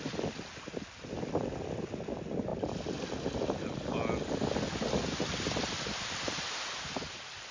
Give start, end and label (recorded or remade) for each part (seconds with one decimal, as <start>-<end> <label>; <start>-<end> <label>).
0.0-7.5 recorded